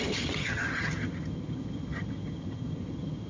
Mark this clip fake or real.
fake